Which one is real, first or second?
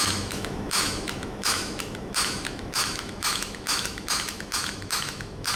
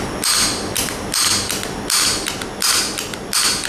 second